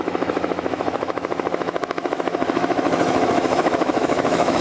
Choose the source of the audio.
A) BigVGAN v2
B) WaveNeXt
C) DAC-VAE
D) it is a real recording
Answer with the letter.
C